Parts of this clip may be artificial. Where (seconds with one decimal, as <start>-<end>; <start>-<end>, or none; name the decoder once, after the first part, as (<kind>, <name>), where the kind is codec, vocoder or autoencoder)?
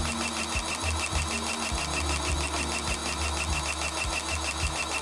none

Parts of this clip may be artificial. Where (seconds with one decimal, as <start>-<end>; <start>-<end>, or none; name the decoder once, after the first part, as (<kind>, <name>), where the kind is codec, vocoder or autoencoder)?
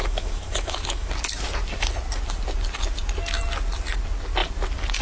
0.0-1.1 (autoencoder, DAC-VAE)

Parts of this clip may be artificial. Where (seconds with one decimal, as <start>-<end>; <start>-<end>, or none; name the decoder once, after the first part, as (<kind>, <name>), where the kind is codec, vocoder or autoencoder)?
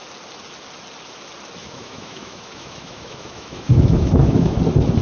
1.6-4.6 (autoencoder, DAC-VAE)